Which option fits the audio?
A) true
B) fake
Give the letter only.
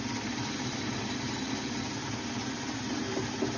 A